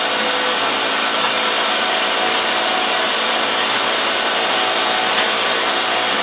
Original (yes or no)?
yes